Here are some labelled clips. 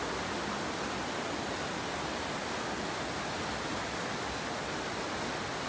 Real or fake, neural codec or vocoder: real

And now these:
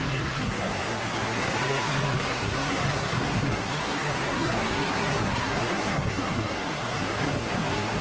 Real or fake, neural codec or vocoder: fake, codec, SNAC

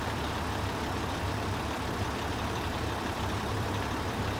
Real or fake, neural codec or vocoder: fake, vocoder, BigVGAN v2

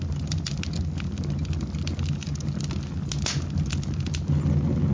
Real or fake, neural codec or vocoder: real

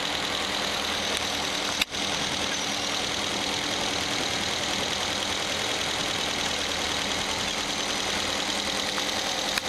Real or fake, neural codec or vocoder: real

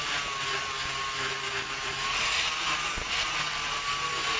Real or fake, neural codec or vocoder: real